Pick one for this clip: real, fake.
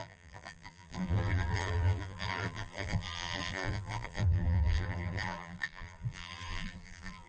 fake